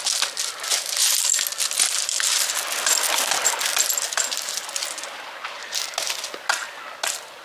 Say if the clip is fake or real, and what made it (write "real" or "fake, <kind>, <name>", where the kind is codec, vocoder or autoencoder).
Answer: real